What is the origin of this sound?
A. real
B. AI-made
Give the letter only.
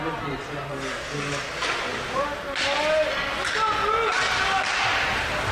A